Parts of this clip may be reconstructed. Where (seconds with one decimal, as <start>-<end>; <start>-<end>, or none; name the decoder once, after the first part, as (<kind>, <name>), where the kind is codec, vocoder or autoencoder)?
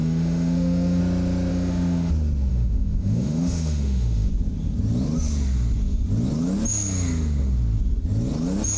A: 0.0-1.0 (autoencoder, DAC-VAE); 1.5-2.1; 2.5-4.3